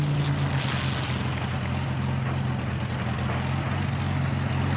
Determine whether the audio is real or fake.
real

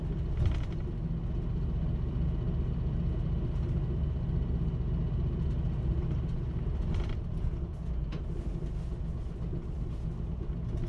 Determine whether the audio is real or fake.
real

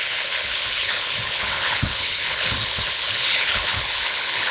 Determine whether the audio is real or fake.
fake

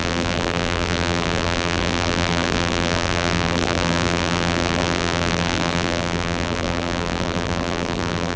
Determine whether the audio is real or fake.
fake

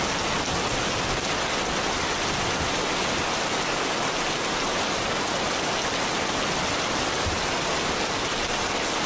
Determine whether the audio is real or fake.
real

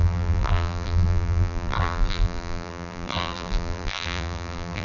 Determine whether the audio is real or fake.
fake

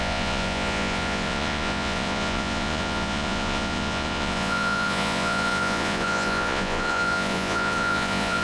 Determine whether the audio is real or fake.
fake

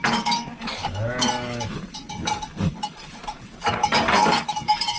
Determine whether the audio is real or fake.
fake